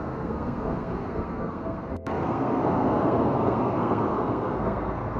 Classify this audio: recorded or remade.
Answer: remade